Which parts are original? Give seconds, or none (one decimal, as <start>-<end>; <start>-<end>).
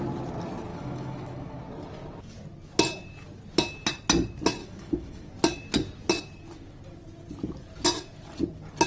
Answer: 0.0-0.7; 1.6-4.6; 5.3-8.9